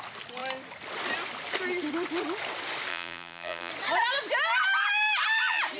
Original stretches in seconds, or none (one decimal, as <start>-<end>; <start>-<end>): 0.0-2.9; 3.7-5.8

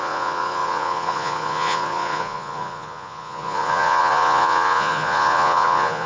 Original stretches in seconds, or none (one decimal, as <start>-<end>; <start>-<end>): none